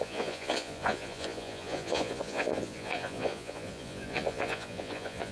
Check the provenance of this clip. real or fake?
fake